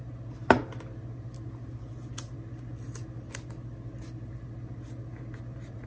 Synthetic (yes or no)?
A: no